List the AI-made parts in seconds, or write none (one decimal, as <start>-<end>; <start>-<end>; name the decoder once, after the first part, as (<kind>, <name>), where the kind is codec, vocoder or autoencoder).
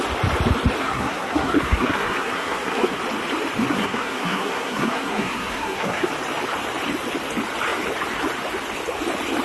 0.8-3.0 (codec, SNAC); 3.7-6.1